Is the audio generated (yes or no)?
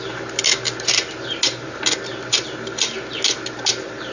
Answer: no